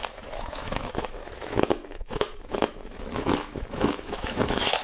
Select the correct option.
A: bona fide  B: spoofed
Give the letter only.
B